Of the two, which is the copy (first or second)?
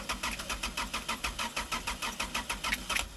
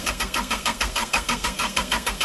second